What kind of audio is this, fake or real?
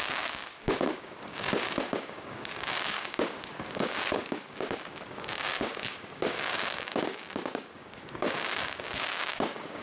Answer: fake